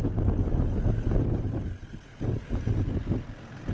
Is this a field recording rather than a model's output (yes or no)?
yes